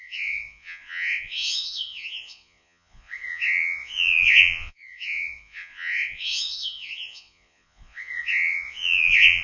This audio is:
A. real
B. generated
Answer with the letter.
B